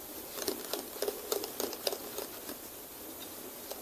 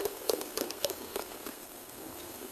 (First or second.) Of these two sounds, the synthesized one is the second